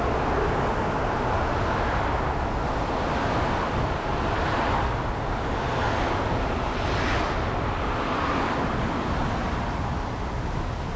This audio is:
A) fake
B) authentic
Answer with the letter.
B